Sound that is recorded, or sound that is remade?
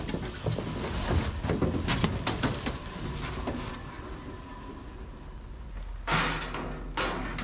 recorded